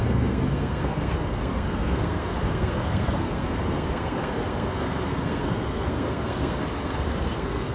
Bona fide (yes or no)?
no